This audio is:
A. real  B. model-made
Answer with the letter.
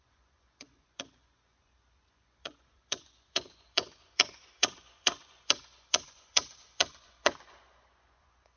B